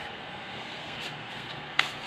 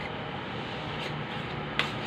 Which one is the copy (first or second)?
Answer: first